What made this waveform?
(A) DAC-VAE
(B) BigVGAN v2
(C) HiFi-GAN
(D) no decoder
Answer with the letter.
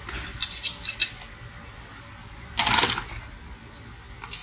D